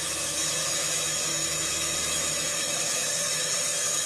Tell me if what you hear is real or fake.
fake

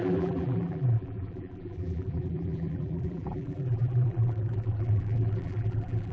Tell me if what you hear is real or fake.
fake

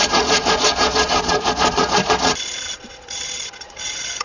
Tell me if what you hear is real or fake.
fake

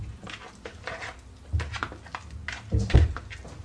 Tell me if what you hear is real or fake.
real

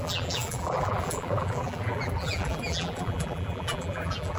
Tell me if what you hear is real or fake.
fake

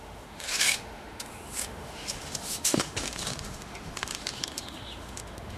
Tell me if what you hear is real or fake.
fake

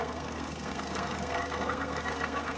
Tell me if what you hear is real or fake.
fake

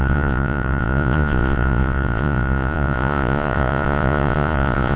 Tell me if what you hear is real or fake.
fake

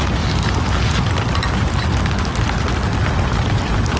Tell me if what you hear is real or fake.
real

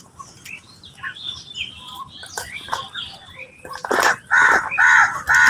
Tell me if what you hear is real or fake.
real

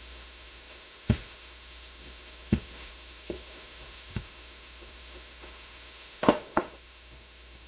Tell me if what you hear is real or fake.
fake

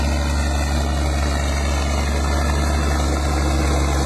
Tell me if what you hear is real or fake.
real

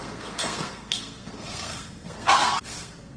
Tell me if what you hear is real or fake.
fake